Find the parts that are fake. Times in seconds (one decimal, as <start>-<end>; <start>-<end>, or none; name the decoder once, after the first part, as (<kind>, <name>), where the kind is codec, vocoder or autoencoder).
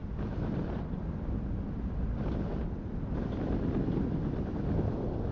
none